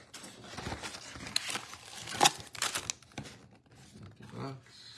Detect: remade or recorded recorded